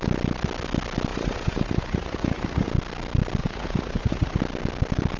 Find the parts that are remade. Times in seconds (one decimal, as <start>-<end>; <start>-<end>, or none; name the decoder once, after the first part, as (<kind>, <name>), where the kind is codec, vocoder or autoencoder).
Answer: 1.1-2.7 (vocoder, Vocos); 3.4-4.4